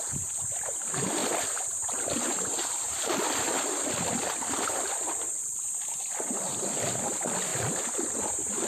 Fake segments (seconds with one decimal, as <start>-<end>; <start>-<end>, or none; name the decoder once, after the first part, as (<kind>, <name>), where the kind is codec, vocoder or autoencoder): 1.2-3.1 (vocoder, BigVGAN v2)